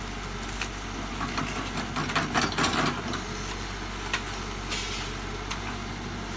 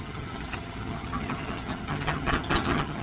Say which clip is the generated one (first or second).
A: second